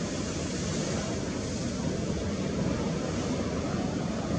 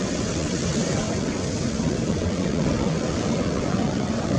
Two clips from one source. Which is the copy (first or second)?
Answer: second